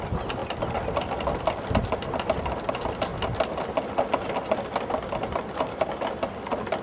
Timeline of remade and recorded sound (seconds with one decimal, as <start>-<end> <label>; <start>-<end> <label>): 0.0-6.8 recorded